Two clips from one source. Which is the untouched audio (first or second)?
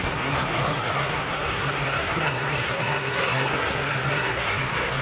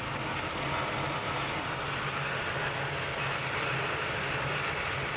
second